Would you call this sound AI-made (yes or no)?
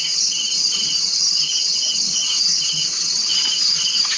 yes